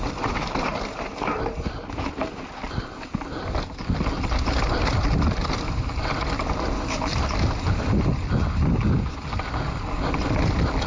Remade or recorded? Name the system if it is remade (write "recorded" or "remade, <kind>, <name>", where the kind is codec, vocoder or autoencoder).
recorded